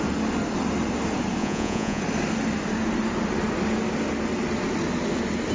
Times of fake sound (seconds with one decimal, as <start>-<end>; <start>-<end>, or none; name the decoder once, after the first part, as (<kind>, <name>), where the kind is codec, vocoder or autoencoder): 1.4-2.0 (vocoder, Vocos)